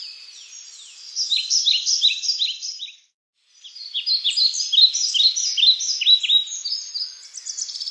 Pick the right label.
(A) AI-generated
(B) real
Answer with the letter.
B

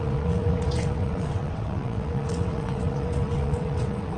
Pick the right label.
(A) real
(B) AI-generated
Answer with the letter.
B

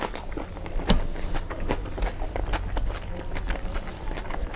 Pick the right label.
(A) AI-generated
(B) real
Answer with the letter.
B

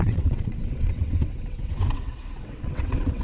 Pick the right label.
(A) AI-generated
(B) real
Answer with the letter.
A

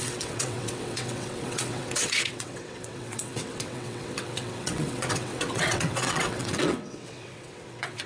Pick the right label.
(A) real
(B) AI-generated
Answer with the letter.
B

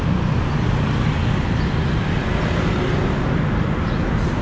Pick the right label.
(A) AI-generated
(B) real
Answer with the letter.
B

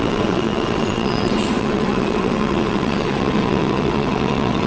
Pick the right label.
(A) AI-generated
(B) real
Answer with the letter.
A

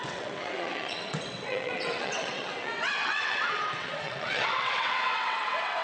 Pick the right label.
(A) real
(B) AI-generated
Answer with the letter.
B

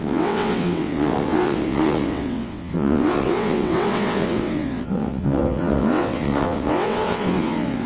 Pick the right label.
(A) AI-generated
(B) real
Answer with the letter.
A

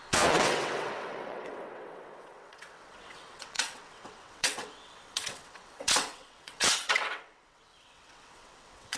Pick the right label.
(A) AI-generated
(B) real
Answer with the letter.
A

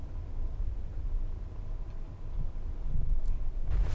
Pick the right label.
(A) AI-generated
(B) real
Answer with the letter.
B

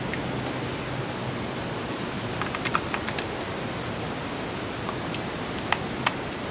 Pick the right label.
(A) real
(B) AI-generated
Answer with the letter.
A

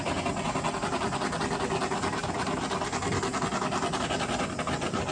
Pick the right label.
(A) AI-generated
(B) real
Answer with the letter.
B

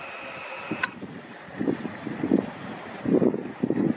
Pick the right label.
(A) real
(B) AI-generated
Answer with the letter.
A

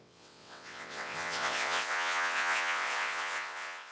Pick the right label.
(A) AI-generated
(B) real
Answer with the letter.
A